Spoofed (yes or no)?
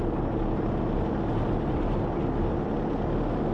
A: no